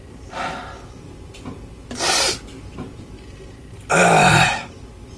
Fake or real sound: real